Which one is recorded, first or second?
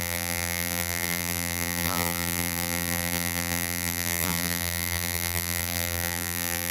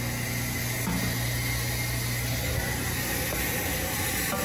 second